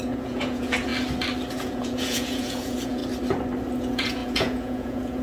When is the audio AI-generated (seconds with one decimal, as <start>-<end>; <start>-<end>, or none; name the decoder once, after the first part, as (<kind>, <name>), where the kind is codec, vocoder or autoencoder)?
0.0-0.9 (vocoder, Vocos); 1.5-3.0; 3.8-5.2